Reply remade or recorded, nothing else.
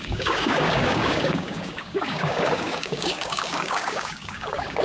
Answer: remade